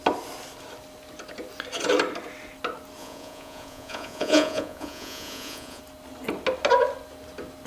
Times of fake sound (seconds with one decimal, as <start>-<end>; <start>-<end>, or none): 3.0-5.8

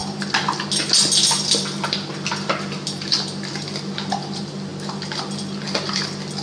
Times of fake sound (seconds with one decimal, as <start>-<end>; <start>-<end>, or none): none

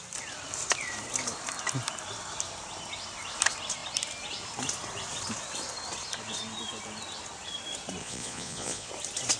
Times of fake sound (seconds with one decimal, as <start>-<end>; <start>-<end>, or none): 8.0-8.9

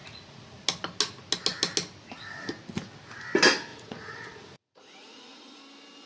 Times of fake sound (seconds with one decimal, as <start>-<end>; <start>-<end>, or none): 0.0-0.6; 3.7-5.6

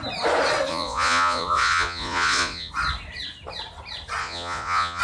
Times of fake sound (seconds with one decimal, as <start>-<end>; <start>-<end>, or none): 0.7-2.7; 4.2-5.0

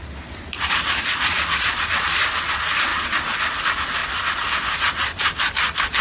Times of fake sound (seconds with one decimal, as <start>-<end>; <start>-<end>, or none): none